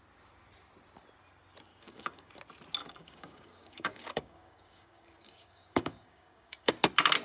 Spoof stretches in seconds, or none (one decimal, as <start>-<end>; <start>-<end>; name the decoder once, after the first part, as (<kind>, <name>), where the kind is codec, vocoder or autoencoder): 1.7-2.3 (codec, DAC); 2.8-6.7